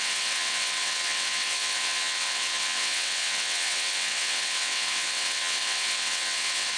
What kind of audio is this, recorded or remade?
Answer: remade